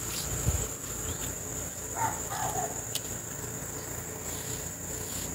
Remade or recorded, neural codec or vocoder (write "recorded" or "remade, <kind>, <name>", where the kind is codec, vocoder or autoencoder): recorded